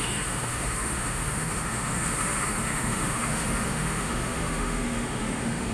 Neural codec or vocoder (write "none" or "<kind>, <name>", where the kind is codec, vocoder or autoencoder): autoencoder, DAC-VAE